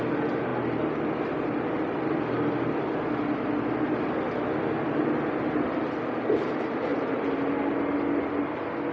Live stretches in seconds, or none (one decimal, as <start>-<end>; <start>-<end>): 0.0-8.9